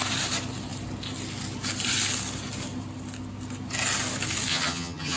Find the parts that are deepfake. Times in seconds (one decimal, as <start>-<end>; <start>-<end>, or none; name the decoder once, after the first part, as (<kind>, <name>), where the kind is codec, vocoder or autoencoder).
4.5-5.2 (vocoder, HiFi-GAN)